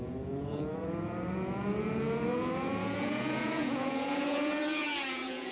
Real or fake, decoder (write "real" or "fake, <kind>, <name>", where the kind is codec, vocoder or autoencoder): fake, vocoder, Vocos